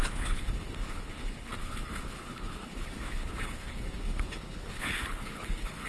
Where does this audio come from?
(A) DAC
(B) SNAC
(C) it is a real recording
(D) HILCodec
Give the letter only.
D